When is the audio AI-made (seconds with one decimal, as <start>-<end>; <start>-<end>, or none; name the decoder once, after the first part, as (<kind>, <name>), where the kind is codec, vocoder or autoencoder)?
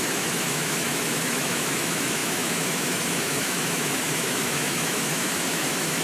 0.0-6.0 (autoencoder, DAC-VAE)